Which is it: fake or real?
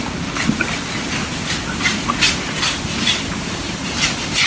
real